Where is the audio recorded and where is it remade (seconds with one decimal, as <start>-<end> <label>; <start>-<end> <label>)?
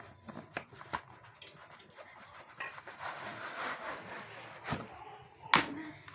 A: 0.0-1.6 recorded; 1.6-2.4 remade; 2.4-6.1 recorded